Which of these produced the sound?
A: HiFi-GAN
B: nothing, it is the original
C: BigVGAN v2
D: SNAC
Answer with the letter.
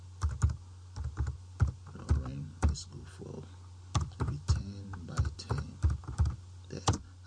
B